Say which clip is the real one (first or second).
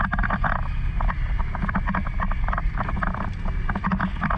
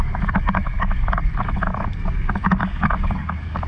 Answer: first